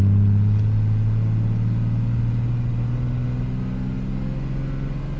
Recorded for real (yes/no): yes